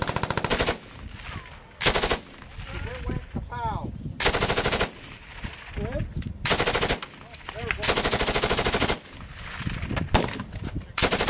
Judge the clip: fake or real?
real